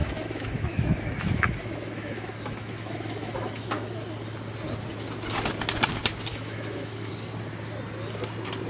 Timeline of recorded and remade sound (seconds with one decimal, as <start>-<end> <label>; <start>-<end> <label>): 0.0-4.0 remade; 4.0-6.3 recorded; 6.3-7.1 remade; 7.1-8.7 recorded